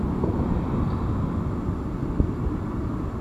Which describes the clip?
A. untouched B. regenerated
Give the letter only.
A